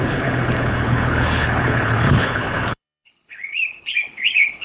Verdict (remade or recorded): remade